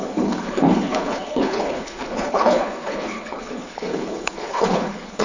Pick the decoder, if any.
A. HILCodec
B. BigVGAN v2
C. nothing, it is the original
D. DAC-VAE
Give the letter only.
A